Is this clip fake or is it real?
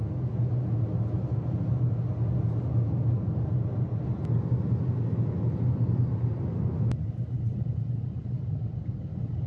real